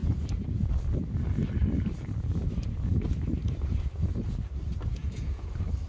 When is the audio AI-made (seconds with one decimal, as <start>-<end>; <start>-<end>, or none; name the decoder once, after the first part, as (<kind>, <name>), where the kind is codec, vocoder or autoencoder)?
5.0-5.5 (vocoder, Vocos)